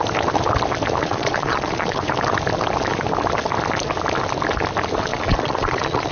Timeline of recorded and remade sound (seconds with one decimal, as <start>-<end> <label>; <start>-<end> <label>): 0.0-1.0 recorded; 1.0-2.1 remade; 2.1-5.1 recorded; 5.1-6.1 remade